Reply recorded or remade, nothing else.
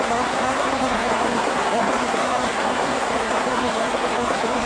remade